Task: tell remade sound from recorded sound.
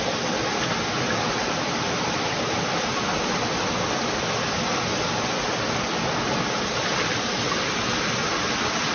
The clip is recorded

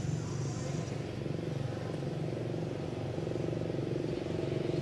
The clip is recorded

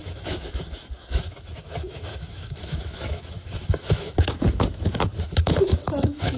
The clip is remade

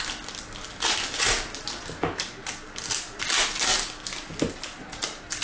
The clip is recorded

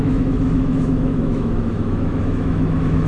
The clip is remade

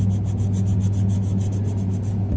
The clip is recorded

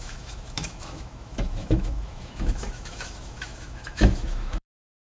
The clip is remade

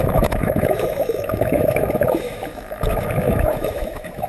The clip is remade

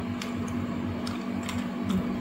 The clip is recorded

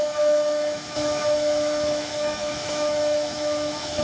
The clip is remade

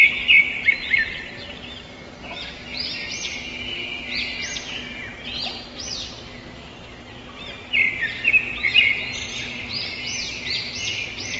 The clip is recorded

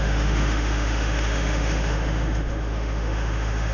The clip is remade